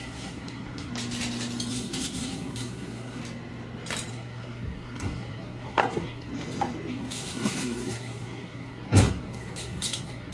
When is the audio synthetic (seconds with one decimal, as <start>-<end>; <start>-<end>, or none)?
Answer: 0.0-0.9; 1.7-3.2; 4.1-6.3; 6.9-10.3